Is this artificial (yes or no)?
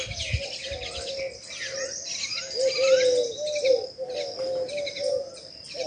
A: no